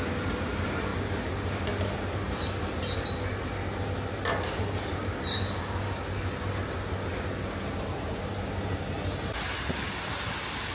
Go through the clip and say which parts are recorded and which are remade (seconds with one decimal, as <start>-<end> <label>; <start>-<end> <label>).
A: 0.0-10.7 recorded